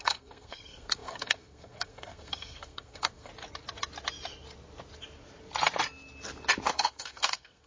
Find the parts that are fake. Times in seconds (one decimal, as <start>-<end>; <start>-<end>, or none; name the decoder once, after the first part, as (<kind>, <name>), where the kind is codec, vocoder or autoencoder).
0.0-3.3 (codec, SNAC); 6.7-7.7